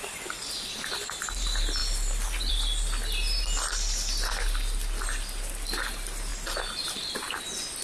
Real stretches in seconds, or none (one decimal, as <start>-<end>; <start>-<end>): 0.0-7.8